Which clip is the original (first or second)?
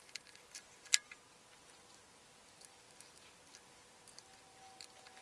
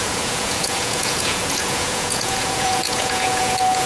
first